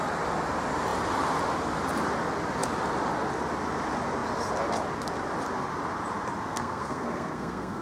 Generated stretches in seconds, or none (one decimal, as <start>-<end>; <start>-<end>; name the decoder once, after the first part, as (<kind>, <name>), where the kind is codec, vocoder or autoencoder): 6.5-7.8 (codec, SNAC)